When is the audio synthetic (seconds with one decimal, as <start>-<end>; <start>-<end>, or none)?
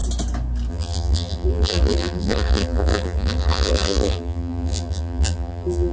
0.7-5.9